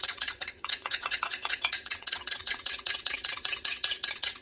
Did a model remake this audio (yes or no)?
yes